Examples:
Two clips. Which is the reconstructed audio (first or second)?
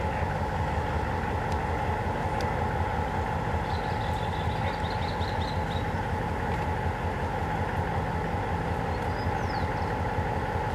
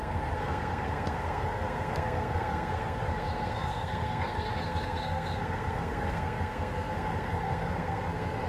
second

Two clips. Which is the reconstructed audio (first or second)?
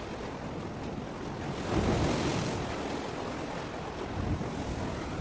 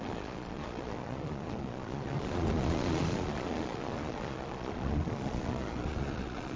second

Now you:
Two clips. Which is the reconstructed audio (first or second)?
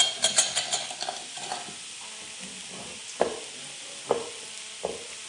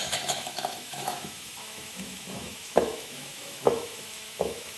second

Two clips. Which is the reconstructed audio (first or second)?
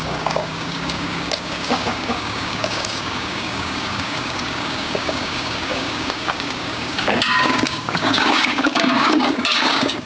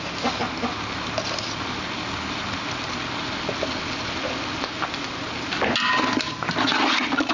first